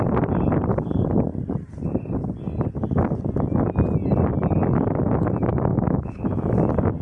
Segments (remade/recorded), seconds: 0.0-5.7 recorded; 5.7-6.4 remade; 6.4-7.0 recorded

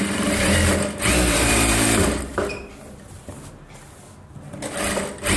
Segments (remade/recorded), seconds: 0.0-2.3 remade; 2.3-5.4 recorded